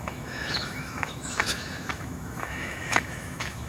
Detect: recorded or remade remade